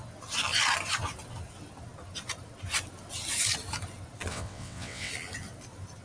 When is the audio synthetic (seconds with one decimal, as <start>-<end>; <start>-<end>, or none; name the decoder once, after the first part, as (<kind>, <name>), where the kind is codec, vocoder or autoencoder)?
4.3-5.1 (vocoder, WaveNeXt)